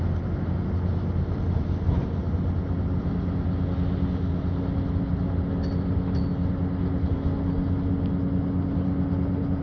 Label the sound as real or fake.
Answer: real